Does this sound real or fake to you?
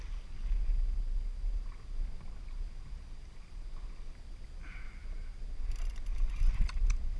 real